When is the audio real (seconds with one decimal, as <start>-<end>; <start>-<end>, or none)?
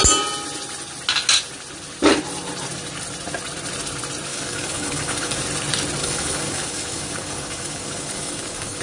0.0-4.3; 5.4-6.0